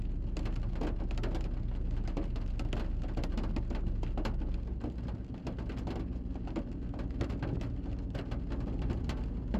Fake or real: real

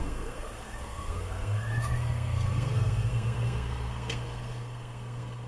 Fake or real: fake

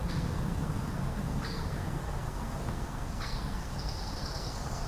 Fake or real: fake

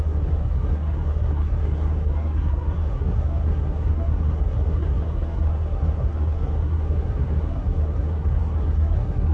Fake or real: fake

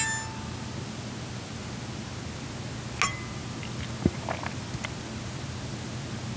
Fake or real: real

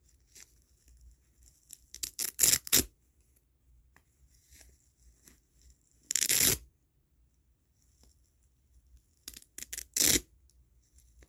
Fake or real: real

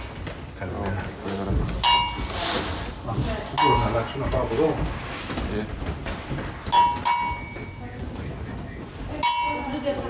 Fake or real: real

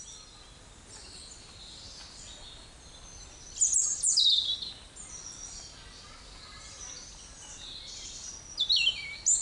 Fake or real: real